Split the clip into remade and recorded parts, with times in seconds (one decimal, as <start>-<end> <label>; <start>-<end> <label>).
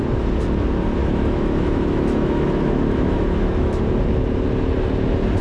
0.0-1.0 recorded; 1.0-3.8 remade; 3.8-5.4 recorded